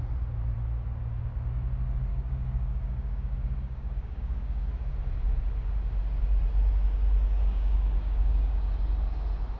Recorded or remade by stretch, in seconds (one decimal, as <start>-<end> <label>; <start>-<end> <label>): 0.0-2.1 recorded; 2.1-4.7 remade; 4.7-7.4 recorded; 7.4-8.7 remade; 8.7-9.6 recorded